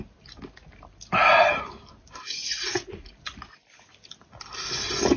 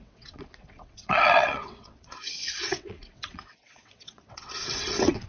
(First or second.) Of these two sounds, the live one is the first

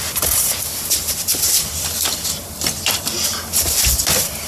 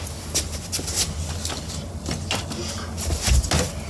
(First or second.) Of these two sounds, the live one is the second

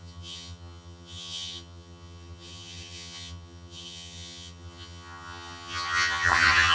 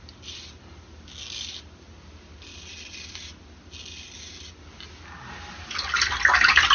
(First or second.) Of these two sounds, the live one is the second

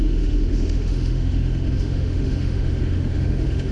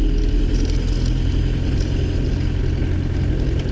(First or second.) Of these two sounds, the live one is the second